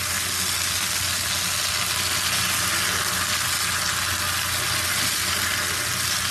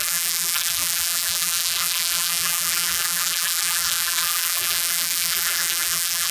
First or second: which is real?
first